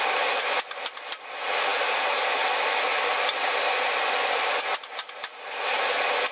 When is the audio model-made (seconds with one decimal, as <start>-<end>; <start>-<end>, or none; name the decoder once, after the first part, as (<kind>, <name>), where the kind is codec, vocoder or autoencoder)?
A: none